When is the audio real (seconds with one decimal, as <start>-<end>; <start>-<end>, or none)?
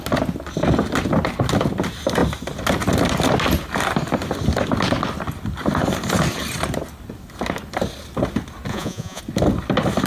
0.0-8.7; 9.2-10.1